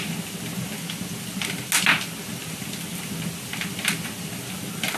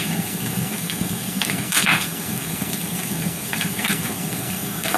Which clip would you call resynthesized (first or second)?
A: second